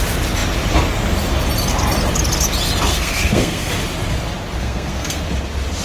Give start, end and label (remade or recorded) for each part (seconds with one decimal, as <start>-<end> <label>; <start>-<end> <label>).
0.0-2.9 recorded; 2.9-3.7 remade; 3.7-4.6 recorded; 4.6-5.2 remade; 5.2-5.8 recorded